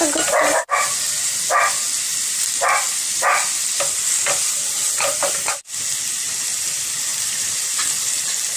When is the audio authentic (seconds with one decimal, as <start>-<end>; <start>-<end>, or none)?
0.0-8.6